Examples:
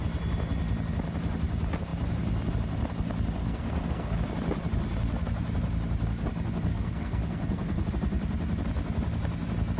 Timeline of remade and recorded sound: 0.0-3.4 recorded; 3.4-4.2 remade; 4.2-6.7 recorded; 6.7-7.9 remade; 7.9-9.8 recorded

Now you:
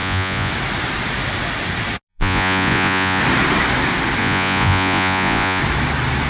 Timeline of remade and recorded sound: 0.0-0.5 remade; 0.5-2.1 recorded; 2.1-3.2 remade; 3.2-4.2 recorded; 4.2-5.6 remade; 5.6-6.3 recorded

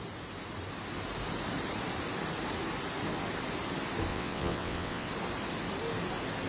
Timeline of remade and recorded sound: 0.0-4.1 recorded; 4.1-5.1 remade; 5.1-6.5 recorded

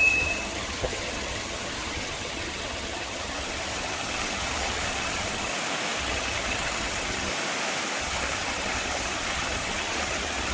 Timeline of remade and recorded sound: 0.0-5.5 remade; 5.5-6.0 recorded; 6.0-7.3 remade; 7.3-8.0 recorded; 8.0-10.5 remade

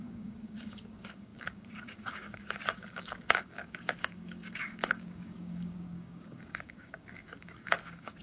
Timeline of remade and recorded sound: 0.0-8.2 remade